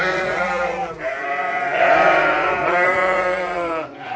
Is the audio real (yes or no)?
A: no